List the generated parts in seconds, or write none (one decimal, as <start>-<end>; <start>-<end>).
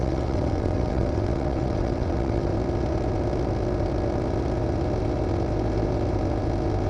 0.0-2.5